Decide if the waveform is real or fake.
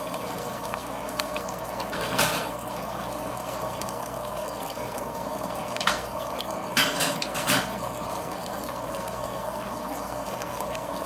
fake